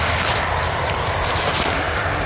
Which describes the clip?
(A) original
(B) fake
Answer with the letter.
A